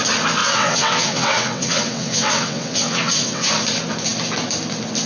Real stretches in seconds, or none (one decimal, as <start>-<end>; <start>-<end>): 0.0-0.4; 3.5-5.1